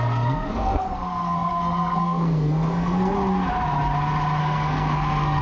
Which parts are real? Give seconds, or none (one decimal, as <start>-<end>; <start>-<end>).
3.1-4.4